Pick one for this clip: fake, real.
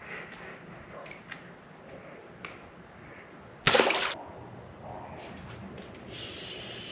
real